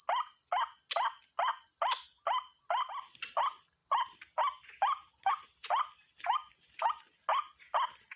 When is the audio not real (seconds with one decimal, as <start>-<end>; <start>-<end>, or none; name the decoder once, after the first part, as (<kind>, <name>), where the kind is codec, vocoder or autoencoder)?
none